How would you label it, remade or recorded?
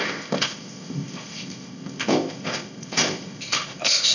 remade